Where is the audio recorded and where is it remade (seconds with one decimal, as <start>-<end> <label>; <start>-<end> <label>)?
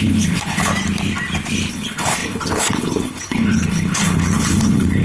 0.0-0.7 remade; 0.7-1.7 recorded; 1.7-5.0 remade